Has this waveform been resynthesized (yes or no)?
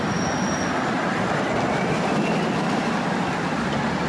no